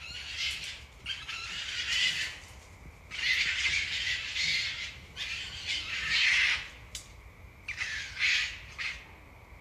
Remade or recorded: recorded